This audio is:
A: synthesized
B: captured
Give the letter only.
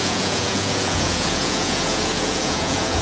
A